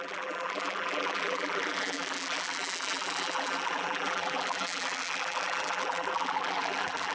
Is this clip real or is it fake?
fake